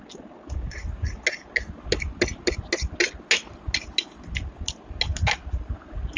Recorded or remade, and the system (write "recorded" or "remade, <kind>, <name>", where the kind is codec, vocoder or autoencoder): recorded